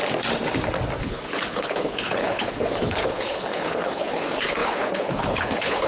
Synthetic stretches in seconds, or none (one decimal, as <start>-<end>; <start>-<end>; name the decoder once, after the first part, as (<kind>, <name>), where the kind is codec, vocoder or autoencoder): 1.0-5.9 (codec, HILCodec)